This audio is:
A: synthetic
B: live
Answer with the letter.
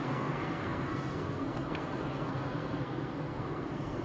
A